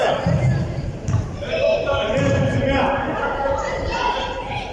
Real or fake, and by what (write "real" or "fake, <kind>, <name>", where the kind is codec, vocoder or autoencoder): fake, vocoder, BigVGAN v2